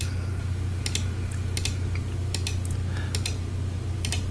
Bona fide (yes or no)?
yes